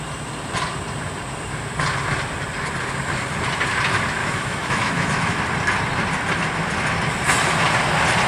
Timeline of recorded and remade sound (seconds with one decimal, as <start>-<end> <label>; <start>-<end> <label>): 0.0-4.2 recorded; 4.2-5.4 remade; 5.4-8.3 recorded